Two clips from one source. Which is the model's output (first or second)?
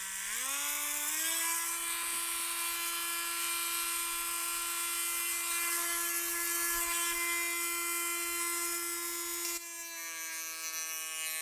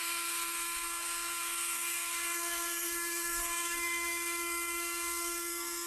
second